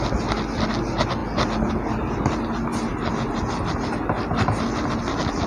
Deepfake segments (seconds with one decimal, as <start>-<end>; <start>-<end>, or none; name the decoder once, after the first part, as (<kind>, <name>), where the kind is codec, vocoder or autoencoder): none